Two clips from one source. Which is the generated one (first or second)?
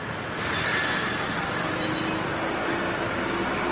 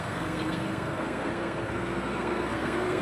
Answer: second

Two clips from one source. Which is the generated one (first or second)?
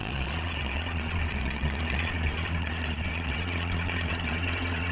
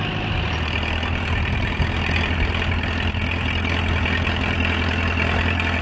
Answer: first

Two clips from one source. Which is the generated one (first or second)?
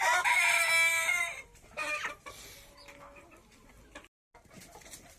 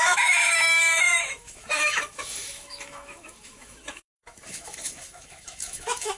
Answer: second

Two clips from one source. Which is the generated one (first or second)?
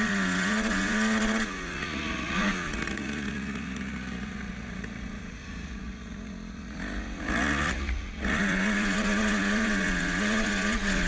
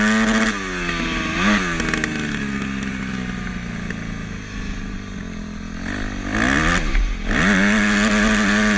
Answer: first